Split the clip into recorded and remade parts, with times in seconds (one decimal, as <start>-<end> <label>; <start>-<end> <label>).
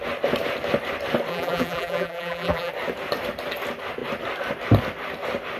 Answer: 0.0-1.3 recorded; 1.3-2.7 remade; 2.7-5.6 recorded